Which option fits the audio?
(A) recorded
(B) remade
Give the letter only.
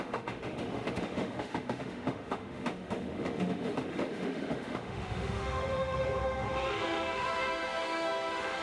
B